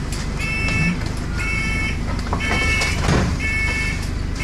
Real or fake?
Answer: fake